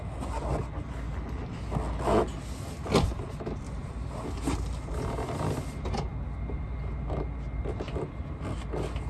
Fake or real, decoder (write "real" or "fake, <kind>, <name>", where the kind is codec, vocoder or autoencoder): real